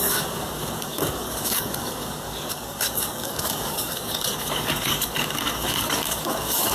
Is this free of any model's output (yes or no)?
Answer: no